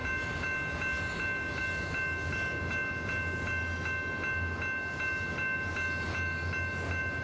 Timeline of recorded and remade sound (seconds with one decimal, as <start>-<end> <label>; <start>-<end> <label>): 0.0-7.2 recorded